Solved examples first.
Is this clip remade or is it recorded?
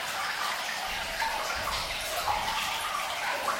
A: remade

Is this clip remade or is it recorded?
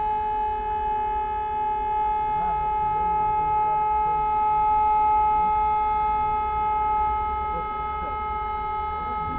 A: recorded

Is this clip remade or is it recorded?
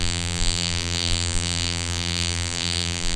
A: remade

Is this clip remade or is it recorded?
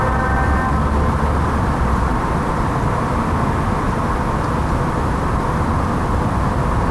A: recorded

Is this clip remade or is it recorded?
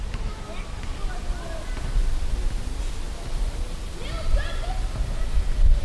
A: recorded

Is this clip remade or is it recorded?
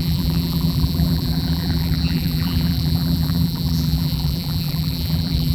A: remade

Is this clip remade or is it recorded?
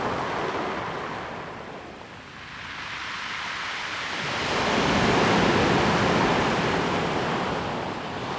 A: recorded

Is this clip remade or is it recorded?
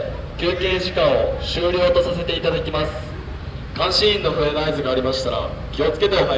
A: remade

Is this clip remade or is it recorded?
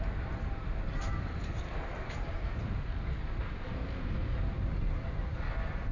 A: recorded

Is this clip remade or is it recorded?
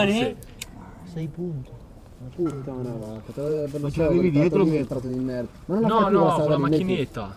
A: remade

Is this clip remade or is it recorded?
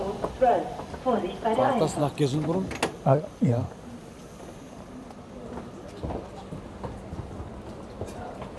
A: recorded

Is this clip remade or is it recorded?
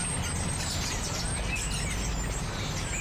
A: recorded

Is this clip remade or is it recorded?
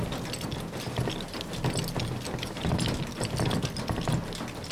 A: recorded